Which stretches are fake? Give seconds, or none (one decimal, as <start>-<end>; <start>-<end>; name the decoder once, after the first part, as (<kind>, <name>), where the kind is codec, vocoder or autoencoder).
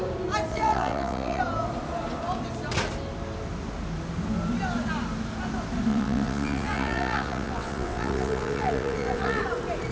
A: 0.5-1.4 (vocoder, WaveNeXt); 5.9-9.4